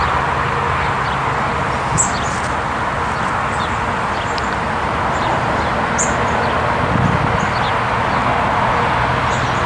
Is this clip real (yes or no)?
yes